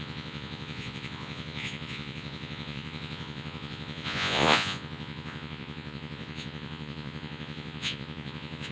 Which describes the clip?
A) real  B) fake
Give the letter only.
B